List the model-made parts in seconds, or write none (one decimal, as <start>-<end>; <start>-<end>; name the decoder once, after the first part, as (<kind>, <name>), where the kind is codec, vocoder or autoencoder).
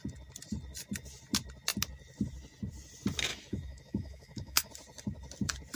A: 3.3-4.7 (autoencoder, DAC-VAE)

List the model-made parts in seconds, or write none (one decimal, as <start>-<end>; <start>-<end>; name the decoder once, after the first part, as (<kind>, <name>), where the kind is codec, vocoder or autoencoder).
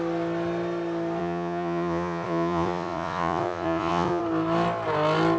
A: 1.2-4.2 (vocoder, Vocos)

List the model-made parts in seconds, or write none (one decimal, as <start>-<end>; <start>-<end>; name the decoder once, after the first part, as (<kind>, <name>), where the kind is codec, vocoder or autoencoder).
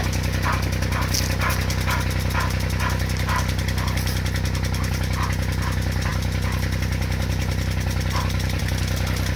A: none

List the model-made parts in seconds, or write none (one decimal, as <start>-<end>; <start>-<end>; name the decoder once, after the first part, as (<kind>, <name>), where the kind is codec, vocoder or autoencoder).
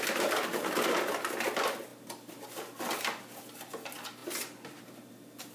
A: none